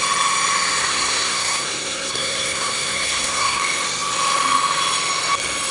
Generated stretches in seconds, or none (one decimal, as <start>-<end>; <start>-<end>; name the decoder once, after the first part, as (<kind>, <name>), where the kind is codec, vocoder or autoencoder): 0.8-3.6 (codec, SNAC)